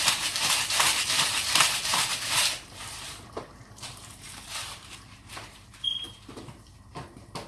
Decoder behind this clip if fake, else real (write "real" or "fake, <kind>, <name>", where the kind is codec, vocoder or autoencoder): fake, vocoder, BigVGAN v2